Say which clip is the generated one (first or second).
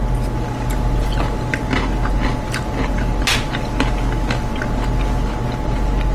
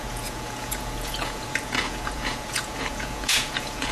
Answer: second